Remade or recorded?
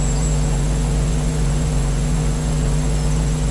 remade